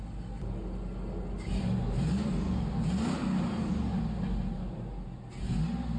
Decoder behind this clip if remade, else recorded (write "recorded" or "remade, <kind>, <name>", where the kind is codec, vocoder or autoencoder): recorded